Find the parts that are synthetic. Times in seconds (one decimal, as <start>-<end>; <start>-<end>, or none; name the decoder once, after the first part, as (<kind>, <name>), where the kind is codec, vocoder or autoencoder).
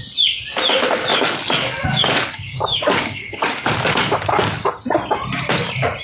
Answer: 1.1-4.7 (codec, DAC)